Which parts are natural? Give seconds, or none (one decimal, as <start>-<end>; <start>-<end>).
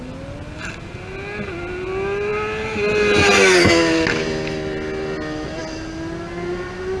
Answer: 0.0-7.0